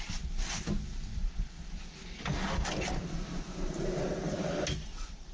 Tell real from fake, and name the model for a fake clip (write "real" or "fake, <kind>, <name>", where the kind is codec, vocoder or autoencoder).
real